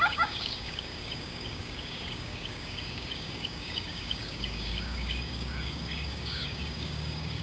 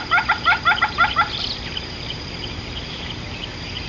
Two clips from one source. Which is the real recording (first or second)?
second